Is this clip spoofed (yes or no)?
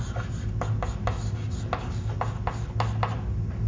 no